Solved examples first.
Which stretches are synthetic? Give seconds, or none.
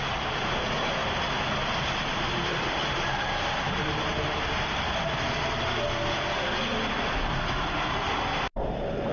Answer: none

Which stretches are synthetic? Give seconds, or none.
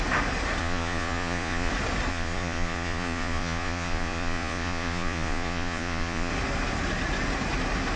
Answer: 0.6-1.7 (vocoder, Vocos); 2.1-6.3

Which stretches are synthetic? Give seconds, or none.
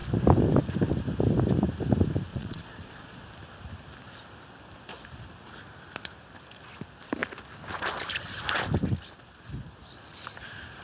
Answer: 2.3-3.2 (vocoder, Vocos)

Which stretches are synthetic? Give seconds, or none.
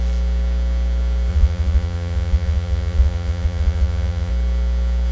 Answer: 1.3-4.3 (vocoder, Vocos)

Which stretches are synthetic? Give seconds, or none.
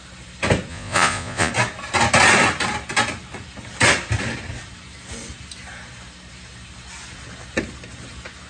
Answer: 0.7-1.5 (vocoder, Vocos)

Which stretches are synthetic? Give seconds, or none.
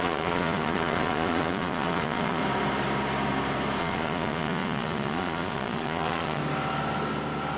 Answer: 0.0-2.4 (vocoder, Vocos); 3.8-6.4